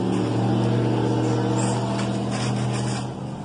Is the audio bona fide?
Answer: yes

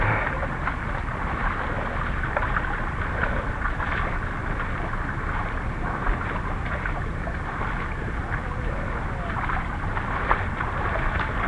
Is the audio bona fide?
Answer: yes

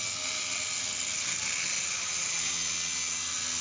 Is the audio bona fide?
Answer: yes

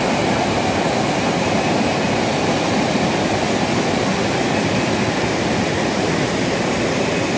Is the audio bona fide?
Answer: yes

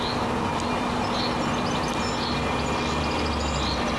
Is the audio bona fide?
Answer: yes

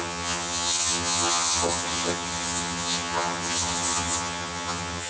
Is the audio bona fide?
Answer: no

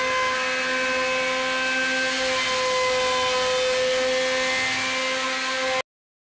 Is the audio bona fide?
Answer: yes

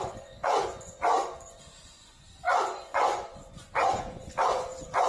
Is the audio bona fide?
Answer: no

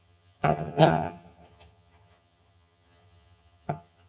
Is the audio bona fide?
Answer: no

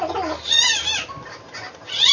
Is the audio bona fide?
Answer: yes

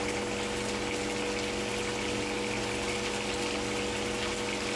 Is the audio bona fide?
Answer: yes